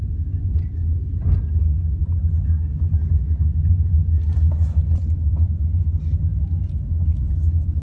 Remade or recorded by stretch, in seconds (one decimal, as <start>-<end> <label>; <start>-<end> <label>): 0.0-7.8 recorded